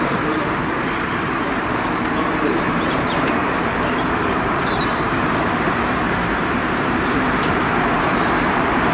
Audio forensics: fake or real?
fake